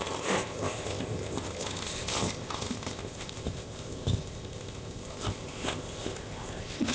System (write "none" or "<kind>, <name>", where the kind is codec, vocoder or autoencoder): codec, ZipCodec